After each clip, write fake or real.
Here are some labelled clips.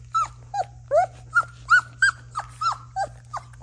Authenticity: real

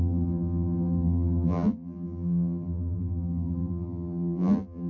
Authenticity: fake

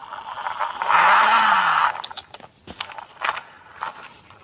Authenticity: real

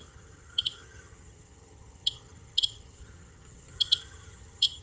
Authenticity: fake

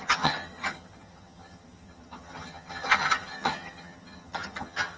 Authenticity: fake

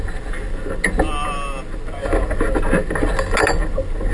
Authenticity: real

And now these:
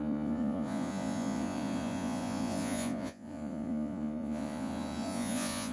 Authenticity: fake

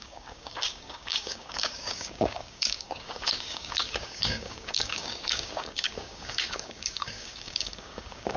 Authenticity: fake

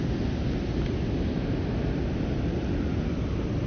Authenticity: real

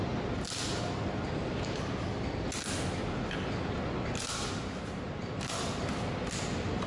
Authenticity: real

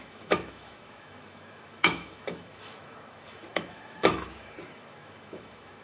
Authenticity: fake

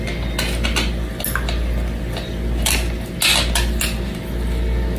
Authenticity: real